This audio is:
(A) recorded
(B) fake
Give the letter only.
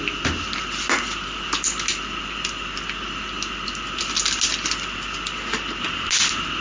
A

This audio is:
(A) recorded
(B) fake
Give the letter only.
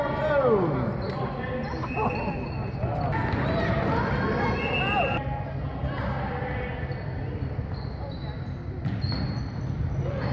A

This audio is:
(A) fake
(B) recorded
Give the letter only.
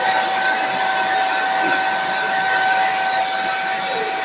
B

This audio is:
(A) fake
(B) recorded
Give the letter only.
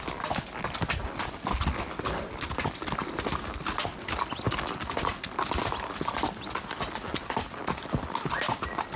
B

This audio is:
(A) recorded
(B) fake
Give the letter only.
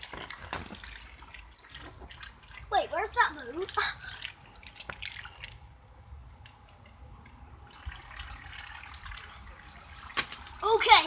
A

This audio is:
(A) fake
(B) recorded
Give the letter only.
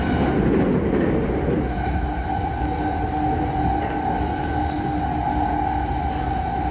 B